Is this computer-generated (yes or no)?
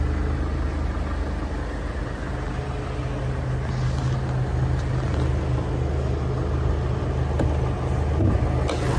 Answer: no